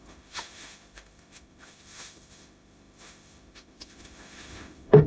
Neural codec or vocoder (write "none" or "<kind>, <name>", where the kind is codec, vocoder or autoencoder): autoencoder, DAC-VAE